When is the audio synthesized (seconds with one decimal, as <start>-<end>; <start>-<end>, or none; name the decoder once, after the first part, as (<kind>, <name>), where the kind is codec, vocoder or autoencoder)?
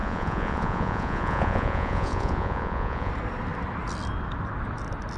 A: 0.0-3.1 (vocoder, Vocos)